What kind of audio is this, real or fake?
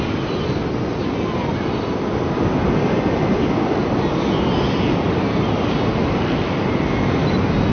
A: real